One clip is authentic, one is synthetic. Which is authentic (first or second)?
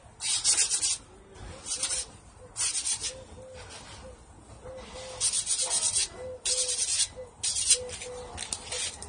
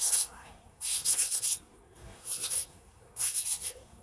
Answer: first